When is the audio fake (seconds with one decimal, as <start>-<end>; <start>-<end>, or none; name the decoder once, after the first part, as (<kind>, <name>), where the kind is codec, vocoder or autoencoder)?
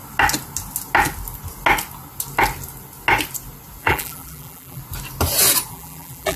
3.8-4.8 (vocoder, BigVGAN v2); 5.7-6.4